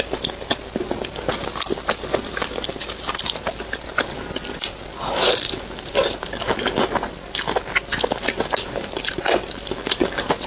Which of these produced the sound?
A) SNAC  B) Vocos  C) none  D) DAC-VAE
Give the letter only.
C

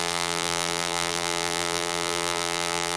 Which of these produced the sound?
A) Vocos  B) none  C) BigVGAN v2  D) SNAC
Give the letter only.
C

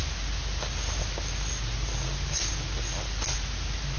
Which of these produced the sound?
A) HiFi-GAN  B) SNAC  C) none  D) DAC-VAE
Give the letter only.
C